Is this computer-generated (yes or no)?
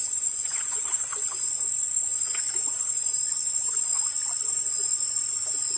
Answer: yes